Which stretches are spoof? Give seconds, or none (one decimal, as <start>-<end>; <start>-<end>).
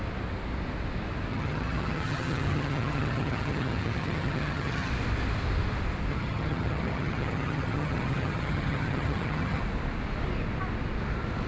1.3-4.9; 6.1-9.6